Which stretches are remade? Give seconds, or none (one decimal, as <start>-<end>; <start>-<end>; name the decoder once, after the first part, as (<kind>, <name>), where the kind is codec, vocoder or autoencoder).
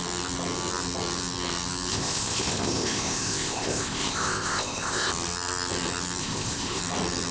1.9-5.1 (codec, ZipCodec); 6.2-6.8